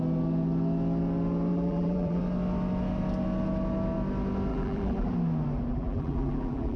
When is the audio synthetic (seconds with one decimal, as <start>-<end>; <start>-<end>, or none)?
1.5-2.2; 4.5-5.1; 5.7-6.8